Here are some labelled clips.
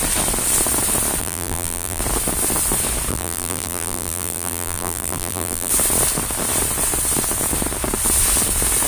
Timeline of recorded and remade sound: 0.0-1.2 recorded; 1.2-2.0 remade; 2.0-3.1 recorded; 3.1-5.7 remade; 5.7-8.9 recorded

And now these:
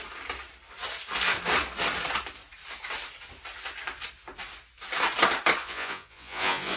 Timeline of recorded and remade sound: 0.0-5.6 recorded; 5.6-6.8 remade

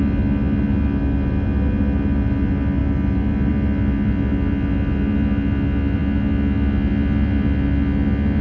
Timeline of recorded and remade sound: 0.0-8.4 recorded

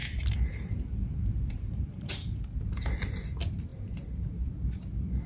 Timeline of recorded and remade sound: 0.0-2.1 remade; 2.1-5.3 recorded

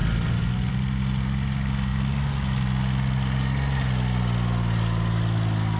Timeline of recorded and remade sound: 0.0-5.8 recorded

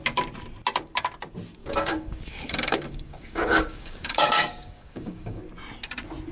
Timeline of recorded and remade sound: 0.0-1.6 recorded; 1.6-5.4 remade; 5.4-6.3 recorded

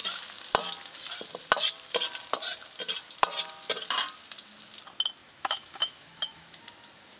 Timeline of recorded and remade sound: 0.0-5.2 recorded; 5.2-6.6 remade; 6.6-7.2 recorded

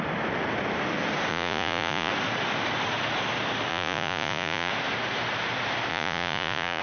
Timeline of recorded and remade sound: 0.0-1.3 recorded; 1.3-2.1 remade; 2.1-3.7 recorded; 3.7-4.7 remade; 4.7-5.9 recorded; 5.9-6.8 remade